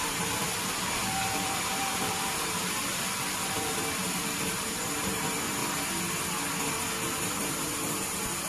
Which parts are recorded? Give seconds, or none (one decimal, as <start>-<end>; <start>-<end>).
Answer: 5.6-7.3